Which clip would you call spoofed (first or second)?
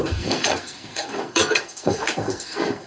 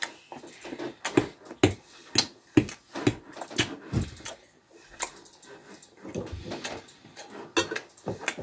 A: first